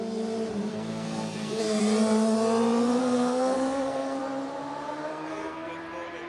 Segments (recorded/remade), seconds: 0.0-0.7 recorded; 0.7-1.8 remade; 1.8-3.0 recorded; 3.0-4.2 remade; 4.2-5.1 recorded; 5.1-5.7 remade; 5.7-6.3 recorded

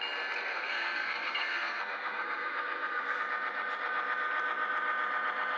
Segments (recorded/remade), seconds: 0.0-0.5 recorded; 0.5-3.2 remade; 3.2-5.6 recorded